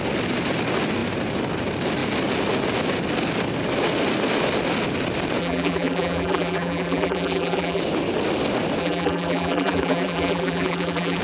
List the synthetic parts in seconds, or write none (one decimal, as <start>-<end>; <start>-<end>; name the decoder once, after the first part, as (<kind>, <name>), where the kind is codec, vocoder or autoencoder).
5.4-7.8 (vocoder, BigVGAN v2); 8.8-11.2